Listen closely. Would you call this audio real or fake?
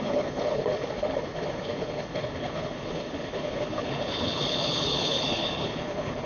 fake